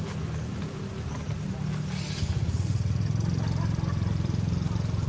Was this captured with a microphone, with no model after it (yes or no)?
yes